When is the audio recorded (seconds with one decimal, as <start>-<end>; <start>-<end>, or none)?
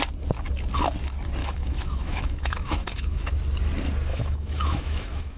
0.0-1.4; 3.3-4.1